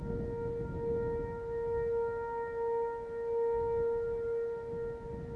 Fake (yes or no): no